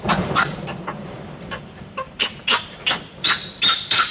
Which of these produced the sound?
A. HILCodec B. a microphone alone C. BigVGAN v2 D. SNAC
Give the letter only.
C